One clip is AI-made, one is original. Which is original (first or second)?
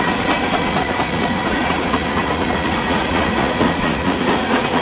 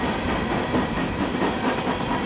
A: second